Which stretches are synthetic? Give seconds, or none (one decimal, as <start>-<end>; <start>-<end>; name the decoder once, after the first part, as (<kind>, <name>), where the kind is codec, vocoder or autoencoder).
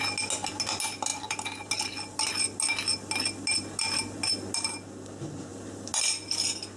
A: none